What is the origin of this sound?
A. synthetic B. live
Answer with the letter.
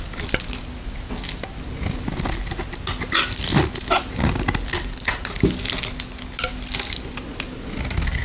B